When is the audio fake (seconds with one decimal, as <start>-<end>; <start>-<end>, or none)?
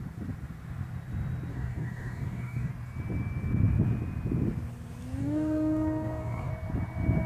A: 1.5-2.7; 5.2-6.5